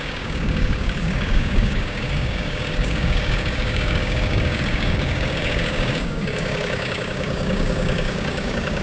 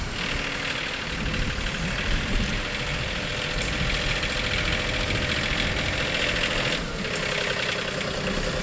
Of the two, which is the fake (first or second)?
first